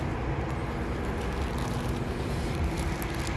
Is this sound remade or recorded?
recorded